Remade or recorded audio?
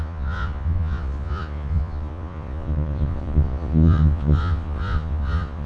remade